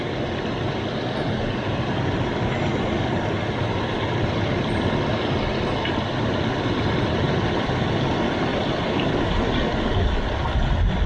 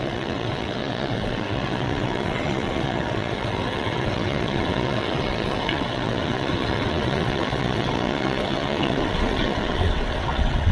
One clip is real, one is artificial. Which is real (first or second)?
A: first